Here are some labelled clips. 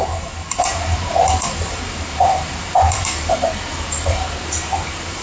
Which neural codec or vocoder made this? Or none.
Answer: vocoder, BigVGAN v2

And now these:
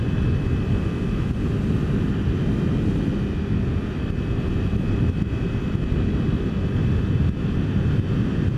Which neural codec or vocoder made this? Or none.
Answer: none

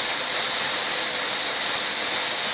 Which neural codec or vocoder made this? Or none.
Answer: none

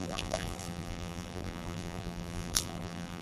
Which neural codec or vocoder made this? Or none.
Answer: vocoder, BigVGAN v2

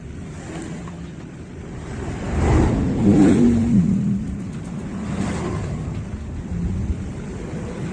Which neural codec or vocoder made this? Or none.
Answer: none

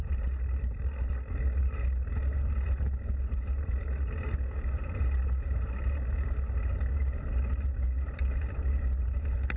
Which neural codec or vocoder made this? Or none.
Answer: none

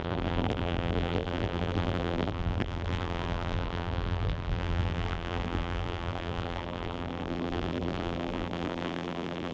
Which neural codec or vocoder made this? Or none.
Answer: vocoder, BigVGAN v2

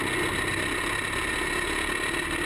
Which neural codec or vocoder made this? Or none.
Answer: none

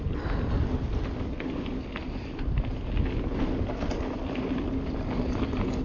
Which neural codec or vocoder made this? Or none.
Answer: none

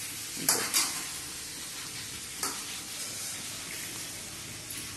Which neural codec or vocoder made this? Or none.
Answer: none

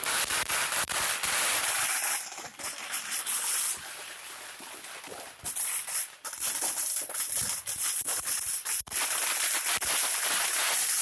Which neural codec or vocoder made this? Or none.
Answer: vocoder, BigVGAN v2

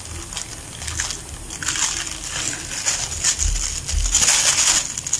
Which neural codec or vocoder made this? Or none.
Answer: none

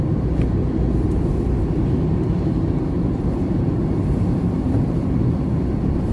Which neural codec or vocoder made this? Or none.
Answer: none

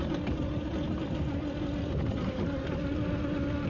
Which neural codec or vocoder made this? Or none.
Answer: none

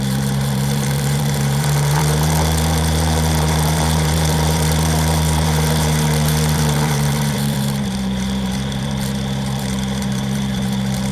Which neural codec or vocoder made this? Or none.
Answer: vocoder, BigVGAN v2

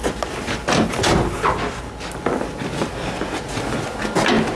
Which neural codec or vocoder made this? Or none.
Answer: none